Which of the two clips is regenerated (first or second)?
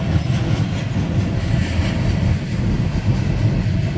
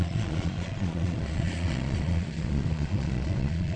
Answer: second